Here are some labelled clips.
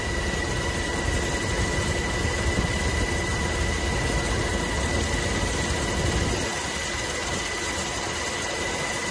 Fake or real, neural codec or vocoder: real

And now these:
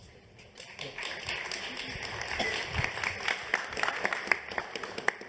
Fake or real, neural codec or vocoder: real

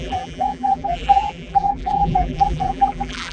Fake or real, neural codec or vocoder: fake, vocoder, BigVGAN v2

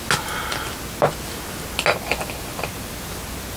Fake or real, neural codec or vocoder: real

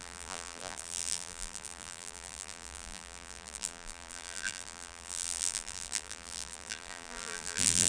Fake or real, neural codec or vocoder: fake, vocoder, BigVGAN v2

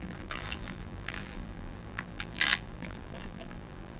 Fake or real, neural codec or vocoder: fake, vocoder, BigVGAN v2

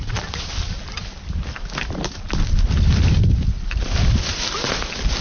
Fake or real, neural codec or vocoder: fake, vocoder, BigVGAN v2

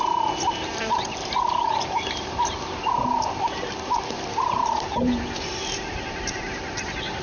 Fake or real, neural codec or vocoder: fake, vocoder, BigVGAN v2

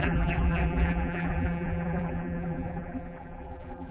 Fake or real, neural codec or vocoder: fake, vocoder, BigVGAN v2